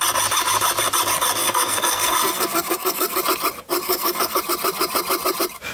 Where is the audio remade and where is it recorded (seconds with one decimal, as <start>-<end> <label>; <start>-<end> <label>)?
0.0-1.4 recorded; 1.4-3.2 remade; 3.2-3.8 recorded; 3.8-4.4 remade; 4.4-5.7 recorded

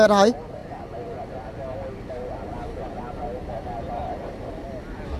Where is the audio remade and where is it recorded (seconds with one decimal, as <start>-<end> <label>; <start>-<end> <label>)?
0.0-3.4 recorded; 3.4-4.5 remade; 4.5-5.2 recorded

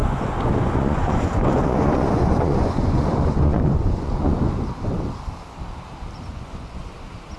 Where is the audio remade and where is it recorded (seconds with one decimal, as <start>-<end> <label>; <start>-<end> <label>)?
0.0-4.4 remade; 4.4-6.3 recorded; 6.3-6.8 remade; 6.8-7.4 recorded

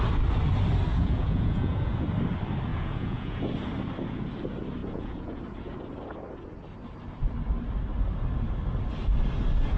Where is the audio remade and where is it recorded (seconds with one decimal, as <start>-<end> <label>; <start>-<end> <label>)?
0.0-0.9 recorded; 0.9-2.1 remade; 2.1-2.7 recorded; 2.7-3.5 remade; 3.5-4.8 recorded; 4.8-5.4 remade; 5.4-9.8 recorded

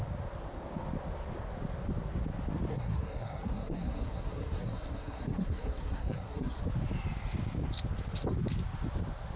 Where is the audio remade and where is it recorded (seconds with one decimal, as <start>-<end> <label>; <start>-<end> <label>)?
0.0-2.7 recorded; 2.7-6.6 remade; 6.6-9.4 recorded